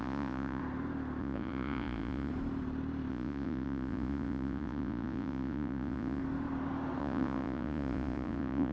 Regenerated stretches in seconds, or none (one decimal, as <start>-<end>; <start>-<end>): 0.0-0.6; 1.2-2.3; 3.1-6.2; 7.0-8.7